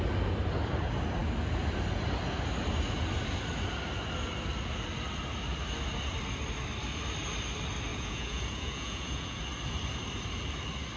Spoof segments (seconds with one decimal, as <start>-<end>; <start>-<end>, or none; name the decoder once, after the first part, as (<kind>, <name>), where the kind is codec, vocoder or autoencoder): 7.9-9.4 (vocoder, Vocos)